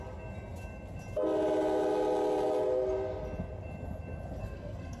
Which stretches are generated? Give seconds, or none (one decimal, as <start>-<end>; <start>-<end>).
4.4-5.0